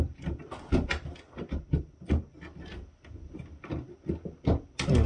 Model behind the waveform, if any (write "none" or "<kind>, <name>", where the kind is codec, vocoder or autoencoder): none